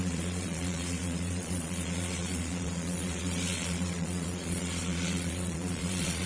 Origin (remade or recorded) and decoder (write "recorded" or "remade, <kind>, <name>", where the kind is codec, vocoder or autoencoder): remade, vocoder, Vocos